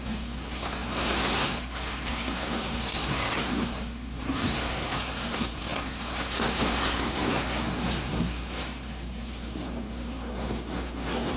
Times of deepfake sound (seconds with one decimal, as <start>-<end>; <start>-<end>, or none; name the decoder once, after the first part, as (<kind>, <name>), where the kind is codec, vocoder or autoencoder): 0.0-11.4 (codec, SNAC)